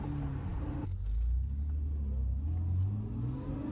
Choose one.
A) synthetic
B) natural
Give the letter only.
B